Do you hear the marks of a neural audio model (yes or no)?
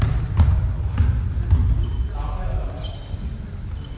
no